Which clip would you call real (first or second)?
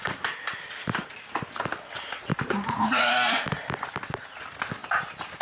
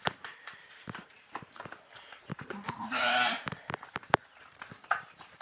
first